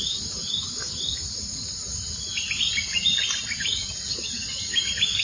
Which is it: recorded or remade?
recorded